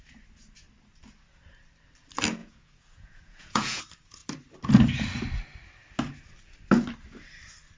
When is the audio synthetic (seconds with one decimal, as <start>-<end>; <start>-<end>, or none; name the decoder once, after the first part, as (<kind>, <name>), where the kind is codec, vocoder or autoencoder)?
2.4-3.8 (vocoder, Vocos)